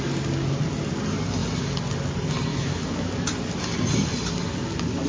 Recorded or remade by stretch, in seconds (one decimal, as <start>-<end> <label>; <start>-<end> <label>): 0.0-2.5 recorded; 2.5-3.1 remade; 3.1-5.1 recorded